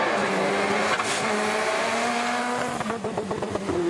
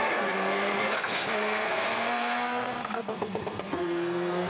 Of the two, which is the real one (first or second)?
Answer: first